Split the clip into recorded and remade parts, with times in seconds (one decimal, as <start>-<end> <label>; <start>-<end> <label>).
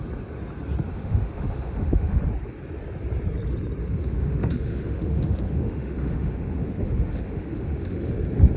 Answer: 0.0-0.9 recorded; 0.9-2.2 remade; 2.2-3.8 recorded; 3.8-8.1 remade; 8.1-8.6 recorded